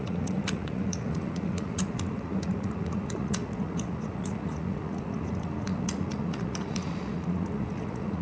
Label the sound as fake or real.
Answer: fake